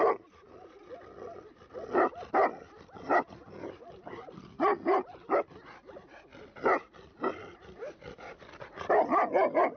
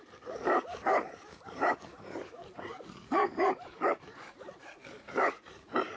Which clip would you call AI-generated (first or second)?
second